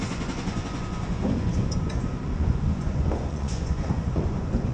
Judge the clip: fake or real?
fake